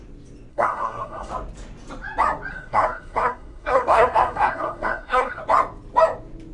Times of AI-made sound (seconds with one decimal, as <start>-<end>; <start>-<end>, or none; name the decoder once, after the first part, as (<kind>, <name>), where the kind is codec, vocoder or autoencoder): 0.5-1.3 (codec, SNAC); 2.5-5.4